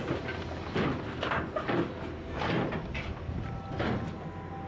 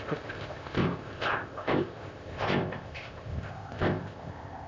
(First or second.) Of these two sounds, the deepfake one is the second